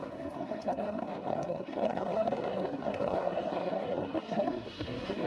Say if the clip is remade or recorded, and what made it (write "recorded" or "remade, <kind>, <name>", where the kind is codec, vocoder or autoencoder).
remade, codec, SNAC